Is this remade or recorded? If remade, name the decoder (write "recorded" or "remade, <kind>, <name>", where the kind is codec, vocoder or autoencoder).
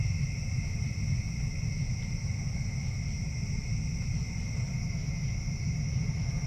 recorded